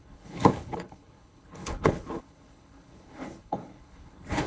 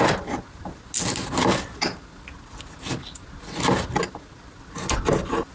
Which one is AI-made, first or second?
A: first